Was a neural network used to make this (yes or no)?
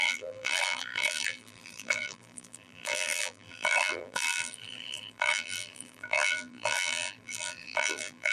yes